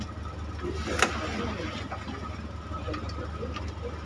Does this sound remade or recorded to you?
recorded